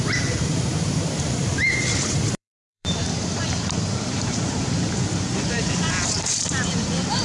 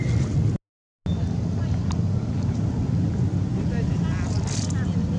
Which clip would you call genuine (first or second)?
second